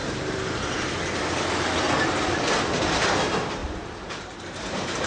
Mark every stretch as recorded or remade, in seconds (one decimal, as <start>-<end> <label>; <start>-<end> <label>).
0.0-3.1 remade; 3.1-5.1 recorded